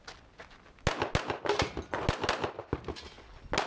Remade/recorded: recorded